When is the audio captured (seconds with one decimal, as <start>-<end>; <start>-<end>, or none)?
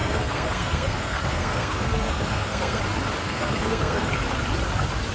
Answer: 2.8-3.2; 4.1-5.1